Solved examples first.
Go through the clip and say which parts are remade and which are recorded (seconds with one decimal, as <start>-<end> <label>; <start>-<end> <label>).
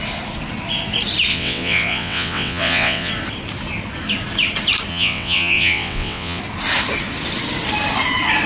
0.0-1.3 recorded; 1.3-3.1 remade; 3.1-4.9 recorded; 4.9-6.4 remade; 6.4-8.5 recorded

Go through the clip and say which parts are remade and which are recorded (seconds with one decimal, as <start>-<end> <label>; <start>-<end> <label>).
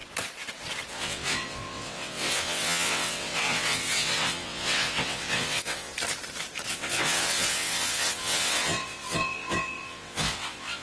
0.0-0.9 recorded; 0.9-5.9 remade; 5.9-6.7 recorded; 6.7-10.8 remade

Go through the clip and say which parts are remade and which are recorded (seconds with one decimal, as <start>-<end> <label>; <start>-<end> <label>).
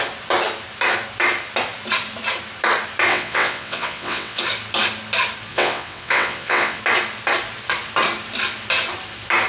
0.0-3.1 recorded; 3.1-4.4 remade; 4.4-5.5 recorded; 5.5-6.8 remade; 6.8-9.5 recorded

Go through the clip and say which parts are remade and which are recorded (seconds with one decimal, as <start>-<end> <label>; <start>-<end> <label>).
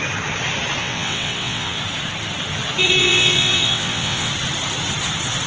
0.0-0.8 recorded; 0.8-1.8 remade; 1.8-3.0 recorded; 3.0-4.3 remade; 4.3-5.5 recorded